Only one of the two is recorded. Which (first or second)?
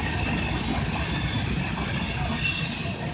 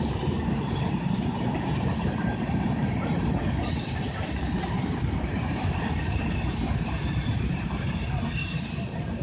first